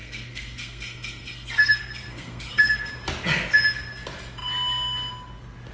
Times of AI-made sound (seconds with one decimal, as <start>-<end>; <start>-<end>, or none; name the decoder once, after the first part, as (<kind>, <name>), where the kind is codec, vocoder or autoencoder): 0.0-2.9 (codec, SNAC)

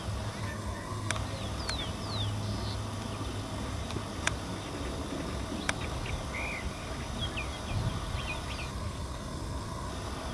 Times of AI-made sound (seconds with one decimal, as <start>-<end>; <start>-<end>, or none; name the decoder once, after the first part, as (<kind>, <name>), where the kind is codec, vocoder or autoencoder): 0.4-1.1 (codec, SNAC); 8.7-9.9

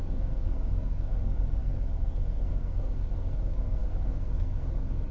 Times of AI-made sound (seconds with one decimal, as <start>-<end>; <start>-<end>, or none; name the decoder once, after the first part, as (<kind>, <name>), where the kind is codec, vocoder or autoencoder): 0.0-5.1 (codec, SNAC)

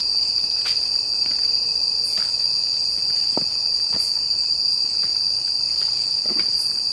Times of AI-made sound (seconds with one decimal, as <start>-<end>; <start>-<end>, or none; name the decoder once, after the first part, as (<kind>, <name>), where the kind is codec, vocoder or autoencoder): none

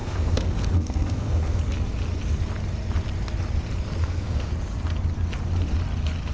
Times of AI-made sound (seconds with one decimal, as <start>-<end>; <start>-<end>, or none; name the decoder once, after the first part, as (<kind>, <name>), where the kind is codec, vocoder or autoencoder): 0.0-1.6 (codec, SNAC); 4.0-4.5